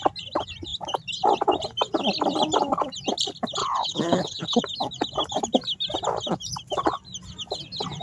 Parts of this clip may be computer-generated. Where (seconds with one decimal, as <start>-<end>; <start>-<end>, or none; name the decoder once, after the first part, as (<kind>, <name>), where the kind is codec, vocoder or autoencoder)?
3.6-4.6 (codec, HILCodec)